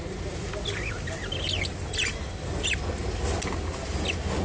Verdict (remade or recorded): recorded